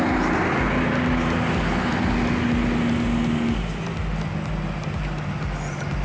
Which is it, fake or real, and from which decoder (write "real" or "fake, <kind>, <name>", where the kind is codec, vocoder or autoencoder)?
real